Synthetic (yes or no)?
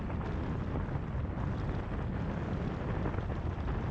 no